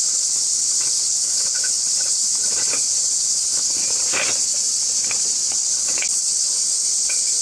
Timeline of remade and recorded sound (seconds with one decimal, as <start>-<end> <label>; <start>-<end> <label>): 0.0-3.8 remade; 3.8-5.5 recorded; 5.5-7.4 remade